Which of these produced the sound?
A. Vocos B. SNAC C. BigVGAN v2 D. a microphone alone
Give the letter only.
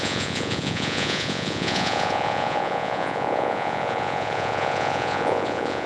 A